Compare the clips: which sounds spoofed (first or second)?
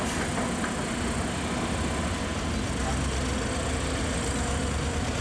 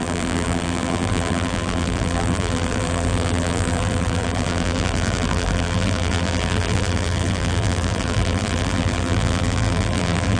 second